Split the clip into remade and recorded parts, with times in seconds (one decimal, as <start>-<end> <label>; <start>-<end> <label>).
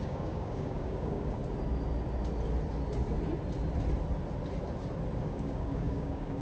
0.0-1.4 remade; 1.4-5.2 recorded; 5.2-6.4 remade